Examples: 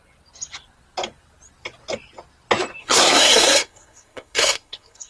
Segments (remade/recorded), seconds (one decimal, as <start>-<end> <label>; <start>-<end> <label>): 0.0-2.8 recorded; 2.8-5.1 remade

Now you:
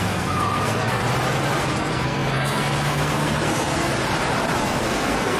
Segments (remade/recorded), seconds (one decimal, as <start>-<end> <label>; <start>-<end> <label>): 0.0-1.0 remade; 1.0-1.6 recorded; 1.6-3.9 remade; 3.9-4.6 recorded; 4.6-5.4 remade

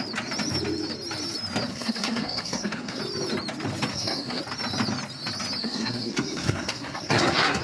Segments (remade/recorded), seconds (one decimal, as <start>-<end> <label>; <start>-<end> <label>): 0.0-1.7 recorded; 1.7-3.0 remade; 3.0-3.9 recorded; 3.9-4.4 remade; 4.4-5.6 recorded; 5.6-7.6 remade